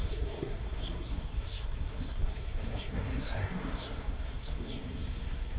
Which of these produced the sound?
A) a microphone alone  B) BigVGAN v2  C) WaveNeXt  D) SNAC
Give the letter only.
D